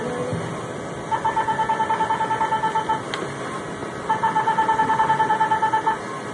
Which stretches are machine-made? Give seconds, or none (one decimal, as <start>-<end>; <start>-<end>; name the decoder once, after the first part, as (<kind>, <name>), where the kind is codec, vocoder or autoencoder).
0.5-1.3 (vocoder, BigVGAN v2); 3.8-5.7